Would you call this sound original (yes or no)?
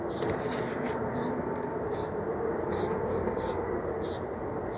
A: yes